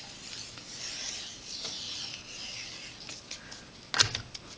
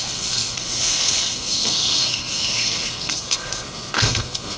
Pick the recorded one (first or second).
first